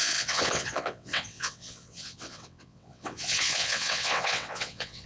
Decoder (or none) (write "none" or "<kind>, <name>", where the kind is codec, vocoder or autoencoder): vocoder, WaveNeXt